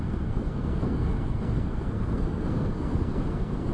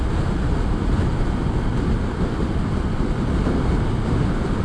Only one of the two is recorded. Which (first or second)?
second